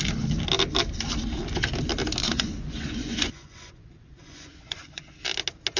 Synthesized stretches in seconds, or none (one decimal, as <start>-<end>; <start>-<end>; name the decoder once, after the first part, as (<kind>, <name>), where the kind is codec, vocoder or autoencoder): 2.2-5.1 (vocoder, Vocos)

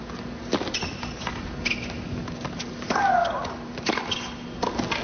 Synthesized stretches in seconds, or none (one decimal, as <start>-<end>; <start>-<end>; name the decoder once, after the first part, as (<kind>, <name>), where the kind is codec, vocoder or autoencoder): none

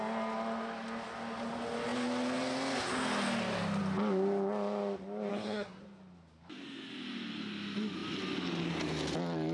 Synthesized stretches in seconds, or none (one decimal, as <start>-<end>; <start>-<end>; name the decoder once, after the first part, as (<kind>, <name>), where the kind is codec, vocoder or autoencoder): 5.3-5.8 (codec, SNAC)

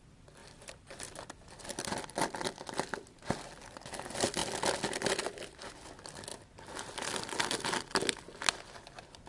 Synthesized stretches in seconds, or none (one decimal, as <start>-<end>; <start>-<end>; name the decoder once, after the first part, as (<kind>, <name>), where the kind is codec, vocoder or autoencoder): none